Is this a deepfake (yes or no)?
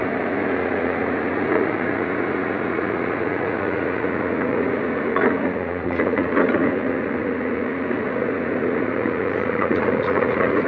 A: yes